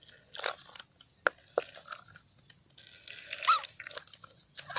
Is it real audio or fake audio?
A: real